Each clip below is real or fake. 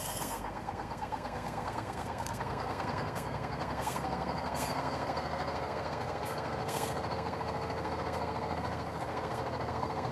fake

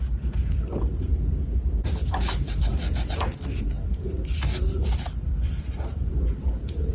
real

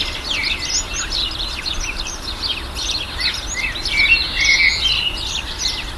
real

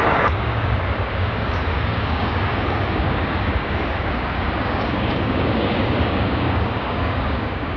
fake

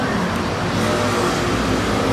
real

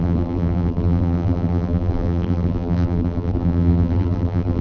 fake